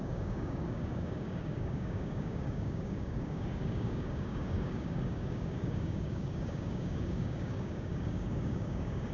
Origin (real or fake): fake